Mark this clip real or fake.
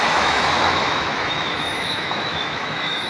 fake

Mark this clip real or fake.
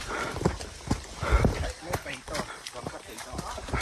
real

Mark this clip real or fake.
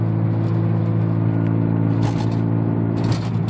real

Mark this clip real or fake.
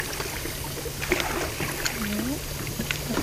real